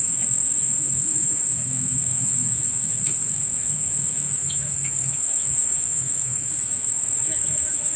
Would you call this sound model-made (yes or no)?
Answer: yes